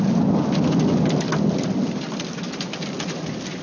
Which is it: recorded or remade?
recorded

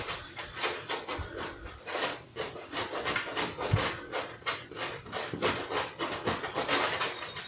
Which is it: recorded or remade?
recorded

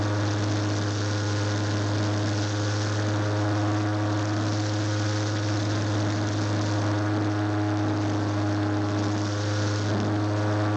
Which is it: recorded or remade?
recorded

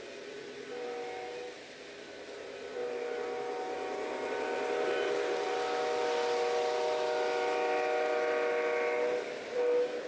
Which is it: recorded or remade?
recorded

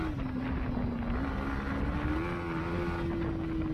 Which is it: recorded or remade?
recorded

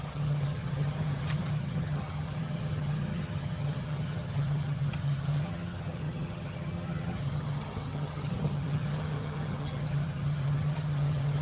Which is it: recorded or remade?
remade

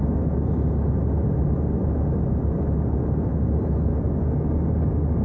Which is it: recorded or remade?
recorded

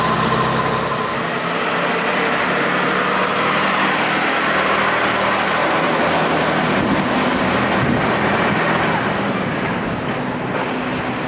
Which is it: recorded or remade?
recorded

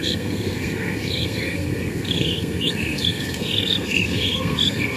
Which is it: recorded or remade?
remade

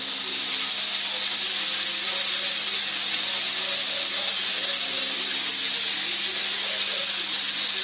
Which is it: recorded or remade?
recorded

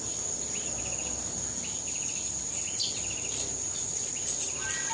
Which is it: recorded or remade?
recorded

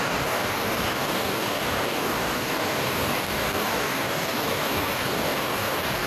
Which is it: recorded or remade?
remade